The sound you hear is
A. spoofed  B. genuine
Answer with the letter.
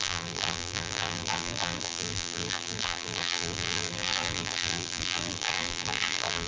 A